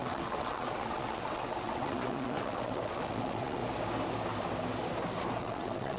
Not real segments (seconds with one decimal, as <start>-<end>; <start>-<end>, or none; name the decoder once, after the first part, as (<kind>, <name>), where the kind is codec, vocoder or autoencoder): 0.0-3.6 (vocoder, WaveNeXt); 5.4-6.0